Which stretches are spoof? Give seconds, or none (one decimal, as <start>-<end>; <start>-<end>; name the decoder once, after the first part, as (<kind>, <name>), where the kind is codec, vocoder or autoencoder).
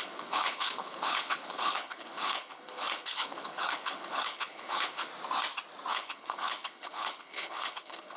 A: 0.0-5.1 (codec, HILCodec); 5.9-8.2